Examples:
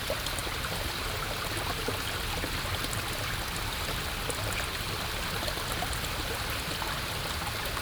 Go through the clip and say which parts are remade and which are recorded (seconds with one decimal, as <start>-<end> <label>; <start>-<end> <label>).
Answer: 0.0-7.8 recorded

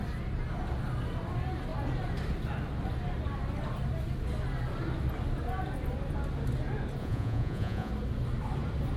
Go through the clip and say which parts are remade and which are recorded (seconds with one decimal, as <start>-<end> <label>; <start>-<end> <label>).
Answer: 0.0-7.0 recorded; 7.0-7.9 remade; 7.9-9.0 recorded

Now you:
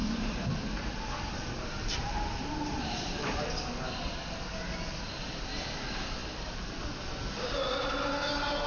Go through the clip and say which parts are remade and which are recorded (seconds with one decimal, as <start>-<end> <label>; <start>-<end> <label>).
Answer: 0.0-3.5 remade; 3.5-6.2 recorded; 6.2-6.8 remade; 6.8-8.7 recorded

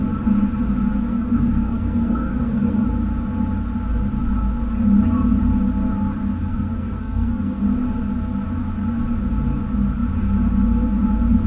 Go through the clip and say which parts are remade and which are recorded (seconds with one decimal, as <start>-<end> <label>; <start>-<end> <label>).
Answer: 0.0-1.1 recorded; 1.1-2.9 remade; 2.9-6.5 recorded; 6.5-7.6 remade; 7.6-11.5 recorded

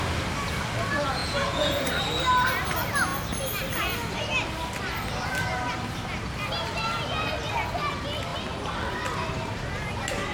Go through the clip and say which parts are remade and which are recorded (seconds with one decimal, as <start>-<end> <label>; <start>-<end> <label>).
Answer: 0.0-1.2 recorded; 1.2-1.9 remade; 1.9-10.3 recorded

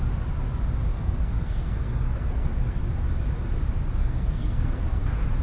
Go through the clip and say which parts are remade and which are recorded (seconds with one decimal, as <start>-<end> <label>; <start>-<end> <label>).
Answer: 0.0-0.9 recorded; 0.9-2.8 remade; 2.8-4.0 recorded; 4.0-5.0 remade; 5.0-5.4 recorded